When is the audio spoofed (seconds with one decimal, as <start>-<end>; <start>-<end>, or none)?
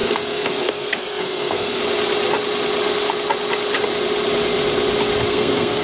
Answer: 0.0-1.8; 5.3-5.8